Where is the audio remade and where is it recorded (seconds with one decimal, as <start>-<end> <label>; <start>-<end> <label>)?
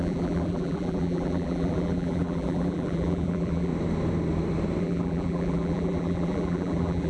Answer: 0.0-3.7 remade; 3.7-4.8 recorded; 4.8-7.1 remade